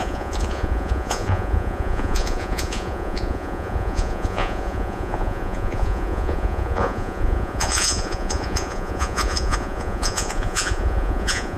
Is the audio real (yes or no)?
no